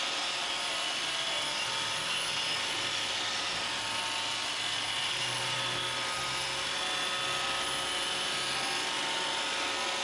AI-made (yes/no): no